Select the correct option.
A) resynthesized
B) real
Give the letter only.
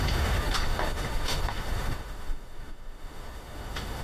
A